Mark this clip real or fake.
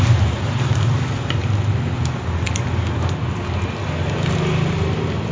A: real